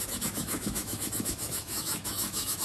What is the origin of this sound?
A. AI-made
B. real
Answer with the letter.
A